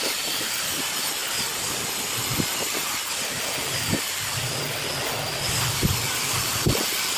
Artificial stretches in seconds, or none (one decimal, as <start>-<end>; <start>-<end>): none